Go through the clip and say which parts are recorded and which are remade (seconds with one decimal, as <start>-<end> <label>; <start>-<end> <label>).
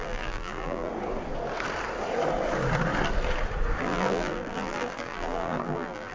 0.0-0.9 remade; 0.9-3.8 recorded; 3.8-6.1 remade